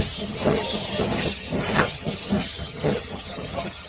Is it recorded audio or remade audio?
remade